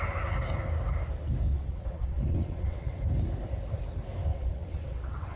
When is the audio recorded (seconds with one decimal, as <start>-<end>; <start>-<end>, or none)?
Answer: 0.0-1.5; 3.0-4.3